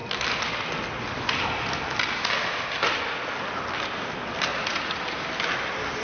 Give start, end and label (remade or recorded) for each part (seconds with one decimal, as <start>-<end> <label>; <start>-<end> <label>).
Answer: 0.0-4.5 recorded; 4.5-5.0 remade; 5.0-6.0 recorded

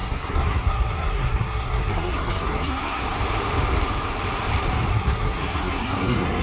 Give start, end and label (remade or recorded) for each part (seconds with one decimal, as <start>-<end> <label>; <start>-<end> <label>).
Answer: 0.0-3.0 remade; 3.0-4.9 recorded; 4.9-6.4 remade

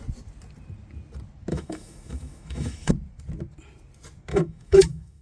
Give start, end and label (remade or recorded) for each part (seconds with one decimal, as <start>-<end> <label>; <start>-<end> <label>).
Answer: 0.0-1.5 recorded; 1.5-2.9 remade; 2.9-4.3 recorded; 4.3-5.2 remade

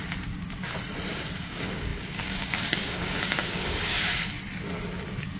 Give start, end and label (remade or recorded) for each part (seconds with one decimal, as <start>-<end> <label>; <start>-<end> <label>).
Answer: 0.0-1.1 recorded; 1.1-4.1 remade; 4.1-5.4 recorded

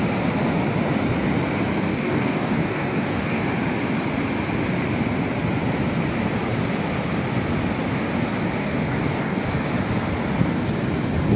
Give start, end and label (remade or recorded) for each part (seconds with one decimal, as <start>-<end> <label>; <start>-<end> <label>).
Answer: 0.0-1.9 recorded; 1.9-3.4 remade; 3.4-8.6 recorded; 8.6-9.4 remade; 9.4-11.4 recorded